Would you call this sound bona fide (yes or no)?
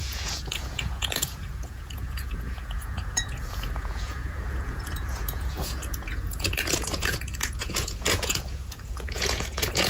no